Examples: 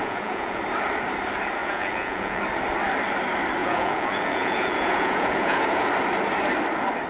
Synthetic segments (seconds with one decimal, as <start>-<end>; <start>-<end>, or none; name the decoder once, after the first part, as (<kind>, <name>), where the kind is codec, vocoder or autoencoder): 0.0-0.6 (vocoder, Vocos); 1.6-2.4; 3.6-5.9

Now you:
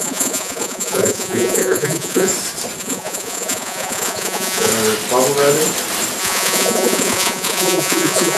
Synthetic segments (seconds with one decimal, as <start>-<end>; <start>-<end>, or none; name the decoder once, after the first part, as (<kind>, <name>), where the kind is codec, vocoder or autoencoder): 0.0-2.3 (vocoder, Vocos); 2.8-4.7; 6.2-8.4

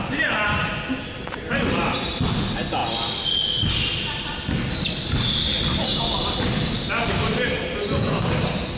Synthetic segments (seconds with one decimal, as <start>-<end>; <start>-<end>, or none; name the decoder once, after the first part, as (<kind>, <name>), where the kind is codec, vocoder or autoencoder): none